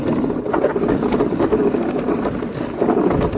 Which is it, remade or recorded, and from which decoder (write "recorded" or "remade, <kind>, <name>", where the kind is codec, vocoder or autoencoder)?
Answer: recorded